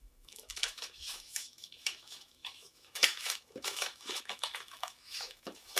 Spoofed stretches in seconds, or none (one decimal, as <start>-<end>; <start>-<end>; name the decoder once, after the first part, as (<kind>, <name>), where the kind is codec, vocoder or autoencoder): 0.0-5.8 (autoencoder, DAC-VAE)